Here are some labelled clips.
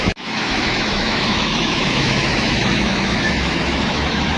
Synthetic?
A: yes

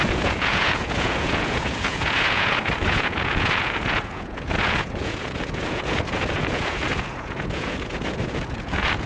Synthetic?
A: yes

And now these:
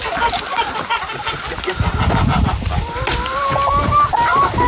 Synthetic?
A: yes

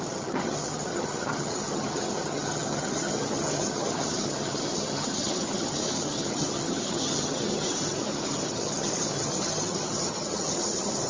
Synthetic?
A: yes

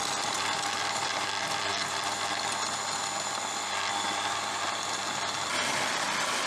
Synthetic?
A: no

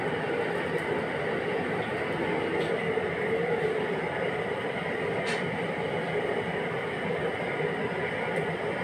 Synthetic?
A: yes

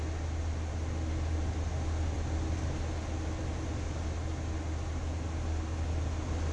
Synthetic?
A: no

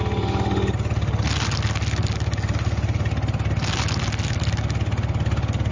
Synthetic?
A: no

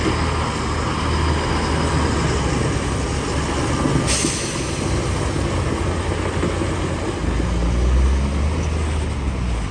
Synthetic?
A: no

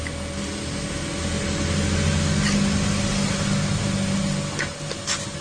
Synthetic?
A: no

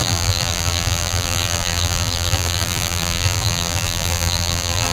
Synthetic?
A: yes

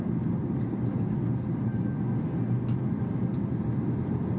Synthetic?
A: no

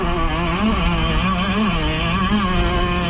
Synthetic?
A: no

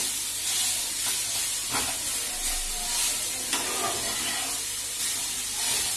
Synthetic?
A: no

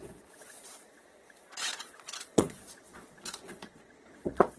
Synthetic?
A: yes